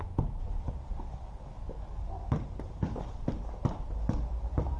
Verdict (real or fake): real